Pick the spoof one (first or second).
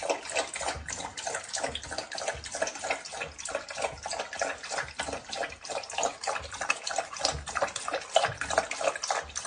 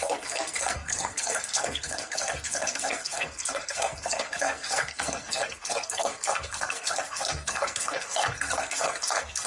second